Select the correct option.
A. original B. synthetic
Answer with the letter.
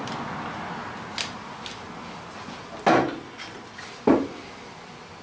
A